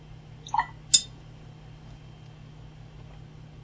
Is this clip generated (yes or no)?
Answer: no